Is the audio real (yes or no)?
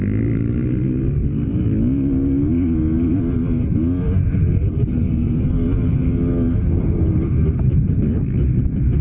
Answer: yes